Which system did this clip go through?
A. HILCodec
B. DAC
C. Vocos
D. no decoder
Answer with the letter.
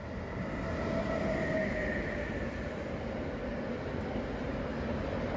D